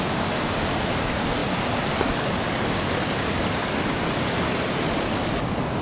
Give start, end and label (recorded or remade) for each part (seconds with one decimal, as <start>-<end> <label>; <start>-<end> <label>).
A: 0.0-5.8 recorded